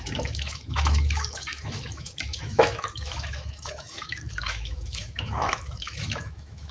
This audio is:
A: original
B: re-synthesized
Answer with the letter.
B